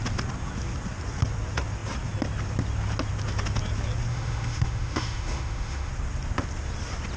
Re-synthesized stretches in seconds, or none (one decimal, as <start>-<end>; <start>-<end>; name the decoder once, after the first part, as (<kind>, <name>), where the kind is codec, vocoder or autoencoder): 4.1-5.9 (autoencoder, DAC-VAE)